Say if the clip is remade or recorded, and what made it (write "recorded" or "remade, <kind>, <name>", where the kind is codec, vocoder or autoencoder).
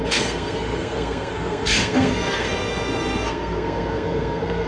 remade, codec, SNAC